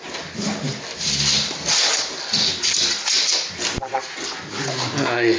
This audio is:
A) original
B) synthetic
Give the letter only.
A